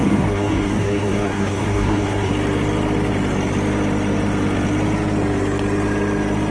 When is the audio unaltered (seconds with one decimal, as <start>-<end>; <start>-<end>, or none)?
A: 2.3-6.5